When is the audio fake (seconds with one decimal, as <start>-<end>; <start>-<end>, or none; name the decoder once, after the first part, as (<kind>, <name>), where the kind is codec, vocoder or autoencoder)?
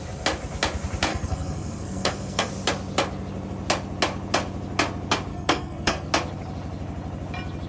1.1-2.5 (codec, SNAC); 5.3-6.1